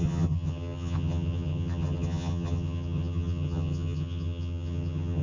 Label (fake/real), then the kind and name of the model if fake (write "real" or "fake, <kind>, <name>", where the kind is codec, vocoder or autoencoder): fake, vocoder, HiFi-GAN